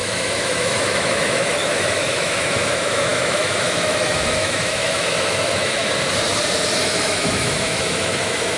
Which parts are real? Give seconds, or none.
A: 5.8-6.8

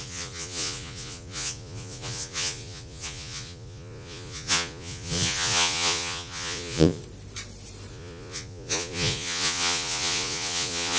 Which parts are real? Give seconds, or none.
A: 7.0-7.9

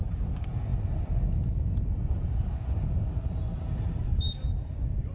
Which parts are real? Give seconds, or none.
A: 0.7-3.8

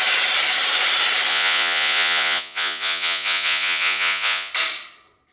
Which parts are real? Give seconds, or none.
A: 0.0-1.3; 4.5-5.3